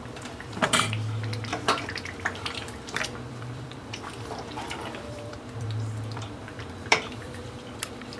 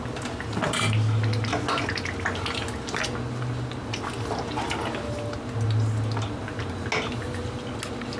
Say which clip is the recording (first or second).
second